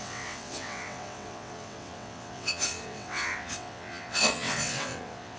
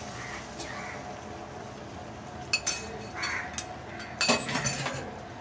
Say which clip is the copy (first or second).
first